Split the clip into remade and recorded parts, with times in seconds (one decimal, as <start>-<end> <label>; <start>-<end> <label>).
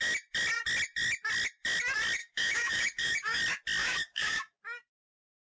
0.0-2.2 recorded; 2.2-3.4 remade; 3.4-3.8 recorded; 3.8-4.6 remade; 4.6-5.5 recorded